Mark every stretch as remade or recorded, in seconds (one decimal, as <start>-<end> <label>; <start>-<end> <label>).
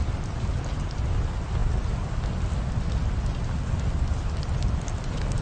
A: 0.0-5.4 recorded